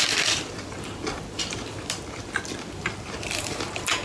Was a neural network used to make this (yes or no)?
yes